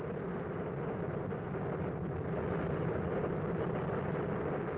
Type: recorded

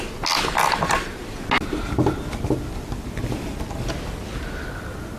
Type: recorded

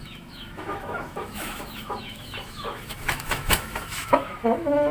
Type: remade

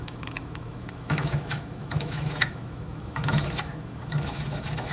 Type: remade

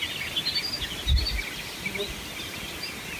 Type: recorded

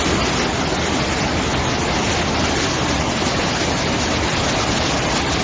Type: recorded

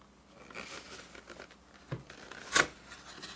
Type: recorded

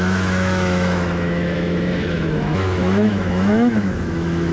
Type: remade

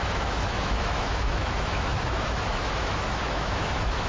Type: remade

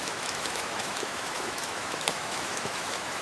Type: remade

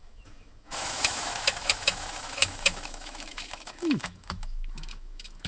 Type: remade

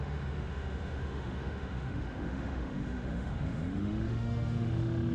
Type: remade